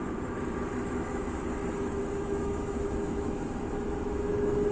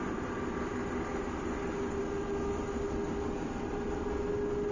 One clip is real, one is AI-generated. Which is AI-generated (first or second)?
first